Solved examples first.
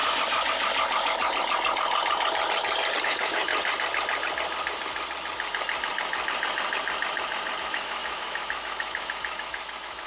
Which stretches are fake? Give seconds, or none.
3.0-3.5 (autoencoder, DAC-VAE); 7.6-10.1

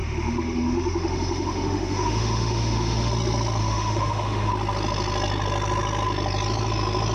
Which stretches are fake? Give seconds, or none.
0.0-3.1 (autoencoder, DAC-VAE); 3.6-4.5